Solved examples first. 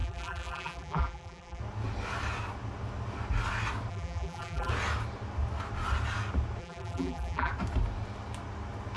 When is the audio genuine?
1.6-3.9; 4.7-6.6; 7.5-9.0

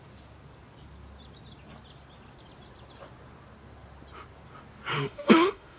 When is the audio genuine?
0.0-4.9

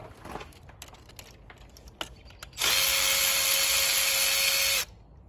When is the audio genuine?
0.0-5.3

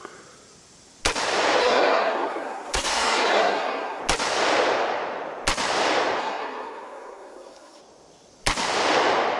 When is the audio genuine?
0.0-1.6; 4.0-6.2; 7.8-9.4

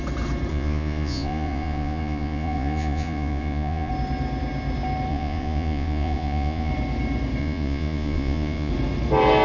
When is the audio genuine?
0.0-0.5; 3.9-5.1; 6.7-7.4; 8.7-9.4

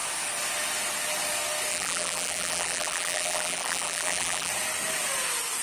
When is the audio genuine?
0.0-1.7; 4.5-5.6